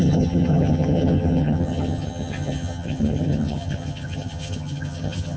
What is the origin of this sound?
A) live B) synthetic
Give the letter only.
B